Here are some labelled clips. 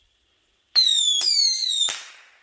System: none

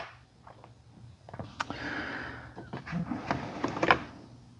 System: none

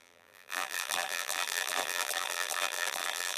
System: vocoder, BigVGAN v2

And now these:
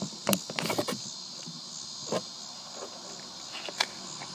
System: none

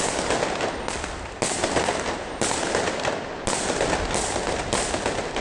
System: none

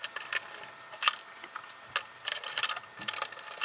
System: none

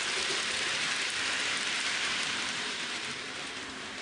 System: vocoder, BigVGAN v2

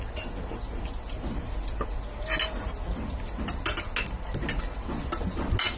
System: none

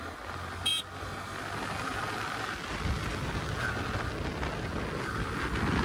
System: none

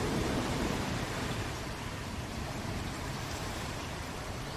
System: vocoder, BigVGAN v2